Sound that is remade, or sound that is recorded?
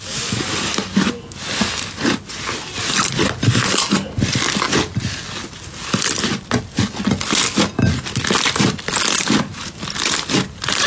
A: recorded